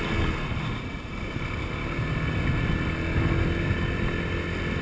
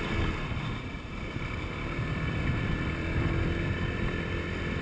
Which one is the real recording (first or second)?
first